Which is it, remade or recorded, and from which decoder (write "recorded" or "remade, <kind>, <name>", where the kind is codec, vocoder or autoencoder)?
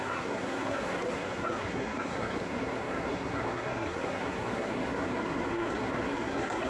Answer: remade, codec, SNAC